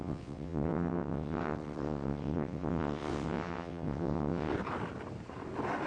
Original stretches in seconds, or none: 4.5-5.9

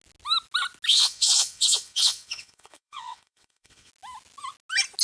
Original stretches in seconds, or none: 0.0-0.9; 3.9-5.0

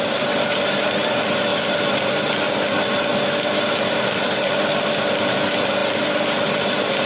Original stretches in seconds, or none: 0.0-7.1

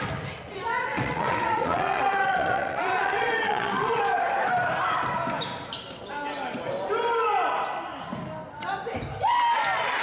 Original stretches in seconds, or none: 0.0-0.9; 4.0-10.0

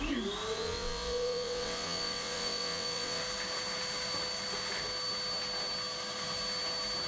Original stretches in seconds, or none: 0.0-0.5; 3.2-7.1

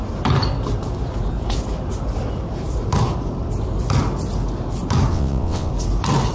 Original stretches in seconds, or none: 0.0-5.1; 5.7-6.3